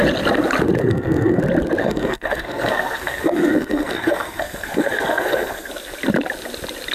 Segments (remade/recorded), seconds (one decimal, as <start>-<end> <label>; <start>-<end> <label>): 0.0-0.8 recorded; 0.8-1.4 remade; 1.4-1.8 recorded; 1.8-5.7 remade; 5.7-6.9 recorded